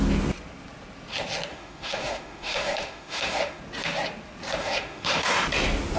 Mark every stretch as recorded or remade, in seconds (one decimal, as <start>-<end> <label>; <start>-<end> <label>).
0.0-1.5 recorded; 1.5-3.6 remade; 3.6-4.6 recorded; 4.6-5.3 remade; 5.3-6.0 recorded